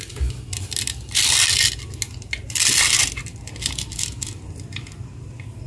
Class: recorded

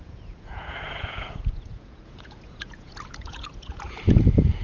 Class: remade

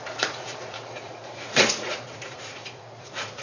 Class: remade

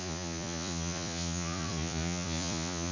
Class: remade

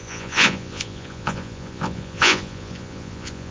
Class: remade